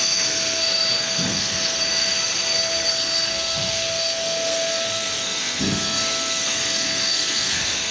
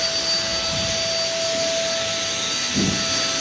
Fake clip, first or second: first